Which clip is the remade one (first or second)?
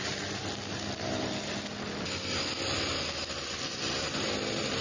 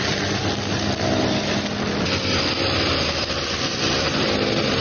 second